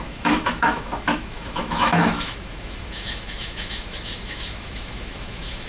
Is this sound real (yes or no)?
no